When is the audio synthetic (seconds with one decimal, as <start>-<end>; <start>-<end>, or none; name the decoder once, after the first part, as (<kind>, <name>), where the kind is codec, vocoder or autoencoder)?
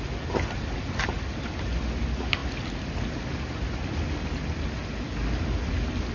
none